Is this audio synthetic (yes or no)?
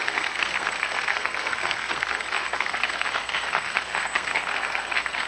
yes